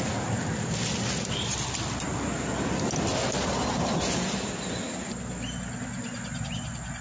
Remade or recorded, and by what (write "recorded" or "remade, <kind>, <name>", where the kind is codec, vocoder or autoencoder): recorded